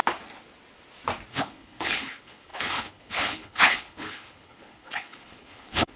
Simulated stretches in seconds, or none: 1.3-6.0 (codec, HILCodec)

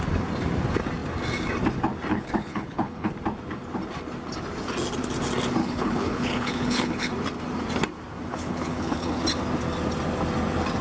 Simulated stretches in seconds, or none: 2.1-3.1 (codec, HILCodec); 5.6-7.1; 8.3-9.2

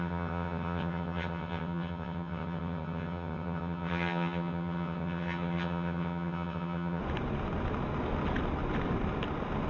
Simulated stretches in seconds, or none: 0.0-7.0 (vocoder, HiFi-GAN)

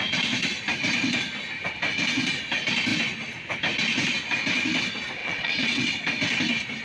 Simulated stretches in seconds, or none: 5.2-5.9 (vocoder, WaveNeXt)

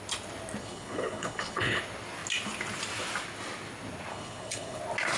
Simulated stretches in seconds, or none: 0.6-1.8 (codec, HILCodec); 4.1-4.8

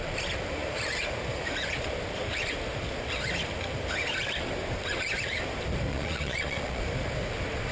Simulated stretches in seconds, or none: 5.9-6.8 (vocoder, Vocos)

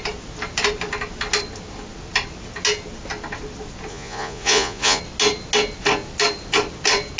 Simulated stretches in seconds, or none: 3.9-5.0 (vocoder, Vocos)

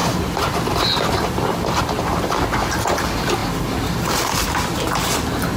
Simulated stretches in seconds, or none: 0.0-1.8 (vocoder, BigVGAN v2)